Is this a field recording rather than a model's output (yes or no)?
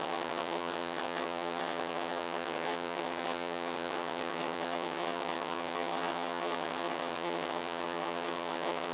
no